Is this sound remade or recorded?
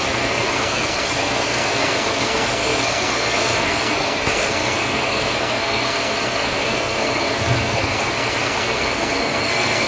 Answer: remade